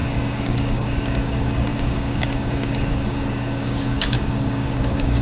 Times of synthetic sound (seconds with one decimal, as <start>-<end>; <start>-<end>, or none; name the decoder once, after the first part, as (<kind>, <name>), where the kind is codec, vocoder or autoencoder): 0.0-5.2 (codec, DAC)

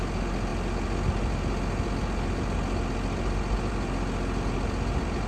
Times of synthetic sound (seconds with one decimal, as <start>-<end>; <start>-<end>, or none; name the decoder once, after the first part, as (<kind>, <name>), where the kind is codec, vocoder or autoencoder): none

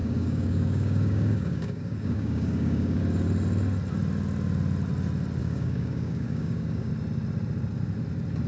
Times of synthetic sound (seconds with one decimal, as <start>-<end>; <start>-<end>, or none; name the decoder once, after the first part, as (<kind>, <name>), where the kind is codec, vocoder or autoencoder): 0.0-3.0 (codec, DAC); 5.4-6.9

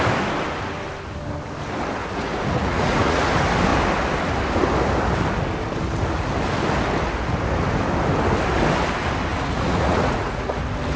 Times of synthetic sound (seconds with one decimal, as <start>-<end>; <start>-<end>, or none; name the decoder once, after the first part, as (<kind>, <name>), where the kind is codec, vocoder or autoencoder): 2.0-3.3 (vocoder, Vocos); 9.3-10.6

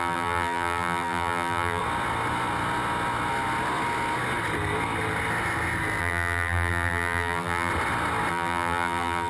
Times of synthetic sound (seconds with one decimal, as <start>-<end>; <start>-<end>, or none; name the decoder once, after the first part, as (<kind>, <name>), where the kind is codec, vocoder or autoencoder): 0.0-1.8 (vocoder, BigVGAN v2); 6.0-7.7; 8.3-9.3

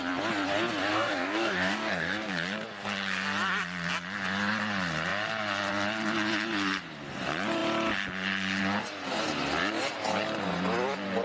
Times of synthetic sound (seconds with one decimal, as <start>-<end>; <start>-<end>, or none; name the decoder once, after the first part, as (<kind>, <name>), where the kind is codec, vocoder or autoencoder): 0.9-2.3 (codec, DAC)